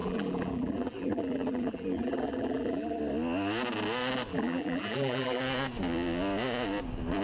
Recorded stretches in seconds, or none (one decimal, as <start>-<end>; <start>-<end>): 3.0-4.3; 5.4-7.2